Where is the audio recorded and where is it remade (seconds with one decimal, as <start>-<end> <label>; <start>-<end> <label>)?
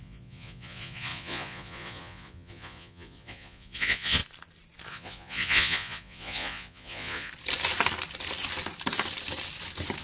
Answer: 0.0-4.2 remade; 4.2-4.9 recorded; 4.9-7.3 remade; 7.3-10.0 recorded